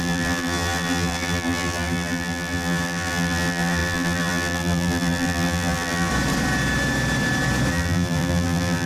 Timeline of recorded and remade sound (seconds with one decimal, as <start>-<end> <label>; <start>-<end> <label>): 0.0-6.1 remade; 6.1-7.7 recorded; 7.7-8.9 remade